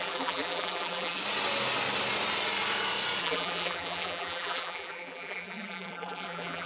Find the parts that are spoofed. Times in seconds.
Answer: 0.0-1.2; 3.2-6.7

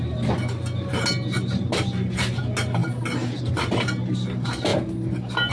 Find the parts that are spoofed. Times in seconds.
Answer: none

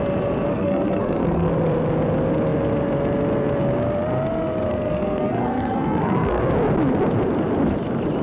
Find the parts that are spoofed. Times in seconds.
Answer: 0.5-1.5; 4.7-6.4

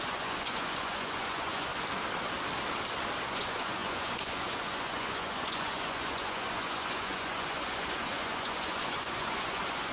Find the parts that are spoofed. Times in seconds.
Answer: 0.0-1.7; 3.3-9.9

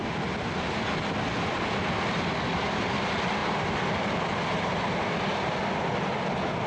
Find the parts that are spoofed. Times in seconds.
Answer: none

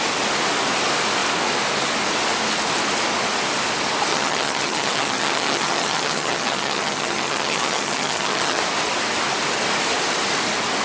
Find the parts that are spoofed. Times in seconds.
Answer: 4.1-8.6

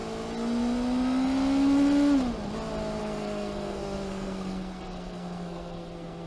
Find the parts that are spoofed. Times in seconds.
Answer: 3.0-6.3

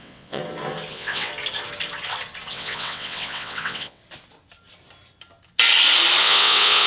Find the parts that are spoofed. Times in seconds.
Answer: 0.0-0.4; 0.9-1.3; 2.5-4.0; 6.2-6.9